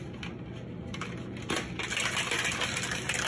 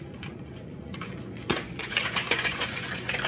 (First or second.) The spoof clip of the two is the second